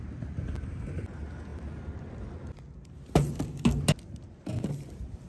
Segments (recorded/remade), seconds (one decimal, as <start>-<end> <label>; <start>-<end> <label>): 0.0-5.3 recorded

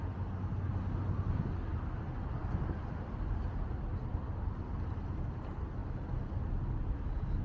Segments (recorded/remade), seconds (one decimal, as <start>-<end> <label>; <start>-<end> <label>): 0.0-7.4 recorded

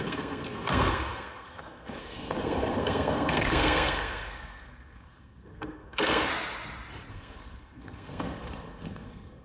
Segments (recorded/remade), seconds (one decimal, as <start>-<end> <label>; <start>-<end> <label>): 0.0-6.3 remade; 6.3-7.1 recorded; 7.1-9.4 remade

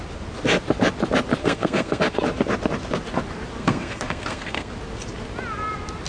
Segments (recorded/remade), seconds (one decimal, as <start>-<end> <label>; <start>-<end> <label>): 0.0-1.4 recorded; 1.4-2.2 remade; 2.2-3.6 recorded; 3.6-4.7 remade; 4.7-6.1 recorded

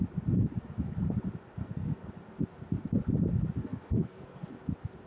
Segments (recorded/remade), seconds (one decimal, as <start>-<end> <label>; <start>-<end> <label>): 0.0-1.6 recorded; 1.6-2.1 remade; 2.1-3.6 recorded; 3.6-4.5 remade; 4.5-5.1 recorded

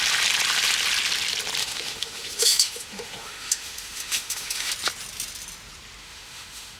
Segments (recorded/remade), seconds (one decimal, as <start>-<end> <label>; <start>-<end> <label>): 0.0-1.6 recorded; 1.6-4.7 remade; 4.7-6.0 recorded; 6.0-6.8 remade